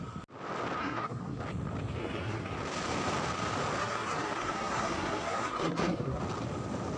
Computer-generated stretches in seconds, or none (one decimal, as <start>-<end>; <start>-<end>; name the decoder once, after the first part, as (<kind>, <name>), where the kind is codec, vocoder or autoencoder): 0.8-1.4 (codec, SNAC); 2.0-2.5; 3.8-6.2